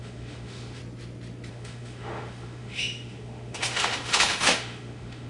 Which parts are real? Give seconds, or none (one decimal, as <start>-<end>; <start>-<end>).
0.8-1.5